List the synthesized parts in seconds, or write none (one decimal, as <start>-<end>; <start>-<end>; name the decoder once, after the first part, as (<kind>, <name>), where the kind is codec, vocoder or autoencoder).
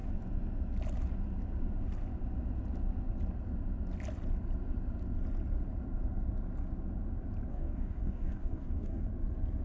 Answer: 7.5-9.1 (codec, DAC)